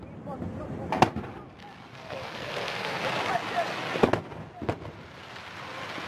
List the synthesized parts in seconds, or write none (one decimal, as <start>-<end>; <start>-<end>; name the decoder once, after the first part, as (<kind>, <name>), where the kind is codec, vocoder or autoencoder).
1.9-3.0 (codec, SNAC)